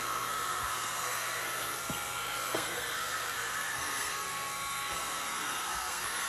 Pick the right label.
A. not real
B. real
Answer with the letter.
A